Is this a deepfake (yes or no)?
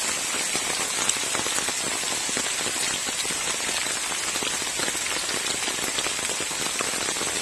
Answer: no